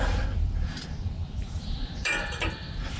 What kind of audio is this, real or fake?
fake